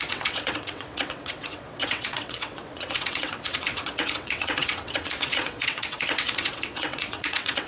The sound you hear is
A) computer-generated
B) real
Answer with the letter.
A